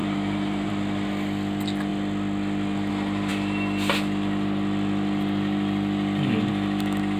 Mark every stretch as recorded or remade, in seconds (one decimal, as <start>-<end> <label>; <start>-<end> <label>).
0.0-0.7 remade; 0.7-7.2 recorded